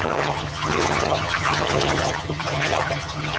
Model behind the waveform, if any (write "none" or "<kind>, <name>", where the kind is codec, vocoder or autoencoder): vocoder, HiFi-GAN